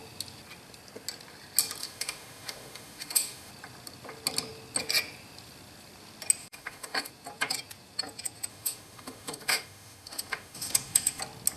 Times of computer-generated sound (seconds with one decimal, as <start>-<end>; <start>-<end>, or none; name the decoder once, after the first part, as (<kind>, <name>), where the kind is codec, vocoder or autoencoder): 1.8-3.5 (autoencoder, DAC-VAE); 6.4-7.1; 8.5-11.2